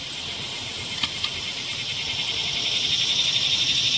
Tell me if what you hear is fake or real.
real